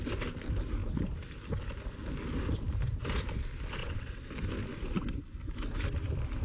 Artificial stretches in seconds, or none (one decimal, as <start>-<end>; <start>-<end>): 3.8-4.3